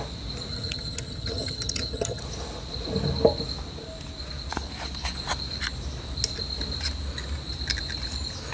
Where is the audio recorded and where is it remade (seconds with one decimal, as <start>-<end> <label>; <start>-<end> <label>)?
0.0-0.5 recorded; 0.5-2.2 remade; 2.2-8.5 recorded